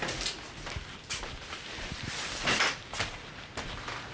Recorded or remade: recorded